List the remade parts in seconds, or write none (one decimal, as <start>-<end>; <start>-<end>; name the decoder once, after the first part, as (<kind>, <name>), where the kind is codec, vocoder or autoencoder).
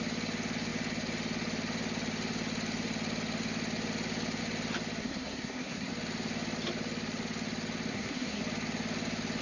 5.0-5.9 (codec, SNAC); 7.9-8.4